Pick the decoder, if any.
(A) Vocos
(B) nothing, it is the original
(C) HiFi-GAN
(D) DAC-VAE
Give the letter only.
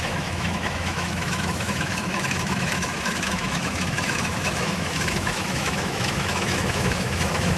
D